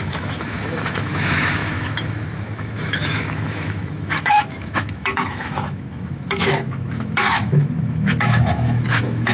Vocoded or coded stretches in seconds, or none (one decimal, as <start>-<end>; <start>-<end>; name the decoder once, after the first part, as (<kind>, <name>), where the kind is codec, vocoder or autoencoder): 0.0-9.3 (autoencoder, DAC-VAE)